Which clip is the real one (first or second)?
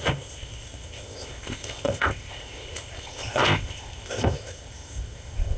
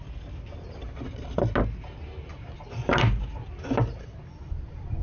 second